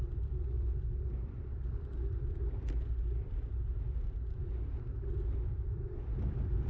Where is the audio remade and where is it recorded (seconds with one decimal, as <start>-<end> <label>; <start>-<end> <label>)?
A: 0.0-3.4 remade; 3.4-5.1 recorded; 5.1-6.7 remade